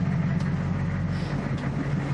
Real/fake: real